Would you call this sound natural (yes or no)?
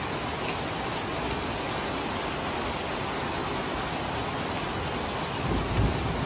yes